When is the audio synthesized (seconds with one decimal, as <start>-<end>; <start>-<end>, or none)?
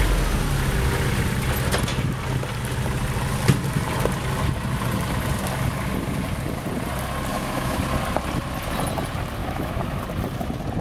7.3-7.8; 9.4-10.0